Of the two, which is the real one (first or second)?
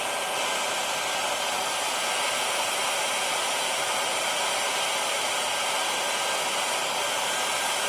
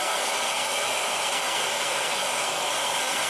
first